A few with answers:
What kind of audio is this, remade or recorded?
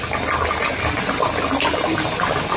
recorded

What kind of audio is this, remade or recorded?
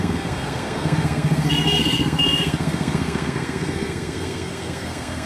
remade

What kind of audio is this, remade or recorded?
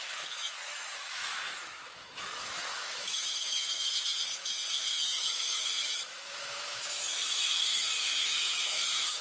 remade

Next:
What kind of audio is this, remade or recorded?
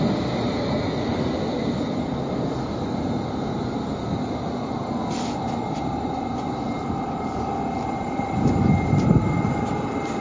recorded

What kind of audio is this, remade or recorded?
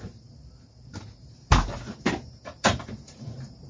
remade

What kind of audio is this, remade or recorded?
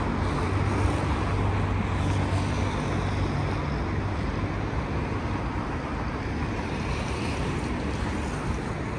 recorded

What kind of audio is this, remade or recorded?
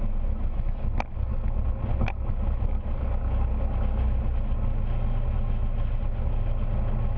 recorded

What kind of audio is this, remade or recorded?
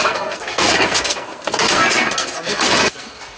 remade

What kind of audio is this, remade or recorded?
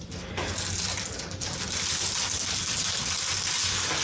recorded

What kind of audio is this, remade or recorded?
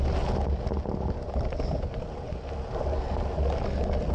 recorded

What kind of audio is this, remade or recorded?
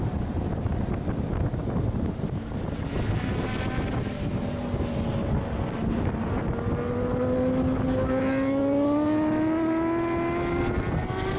recorded